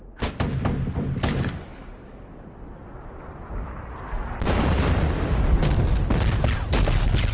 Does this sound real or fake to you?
real